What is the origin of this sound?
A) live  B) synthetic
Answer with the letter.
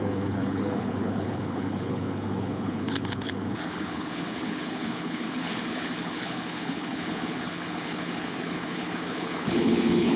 B